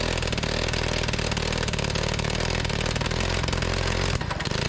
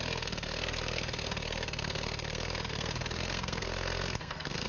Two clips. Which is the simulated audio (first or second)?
second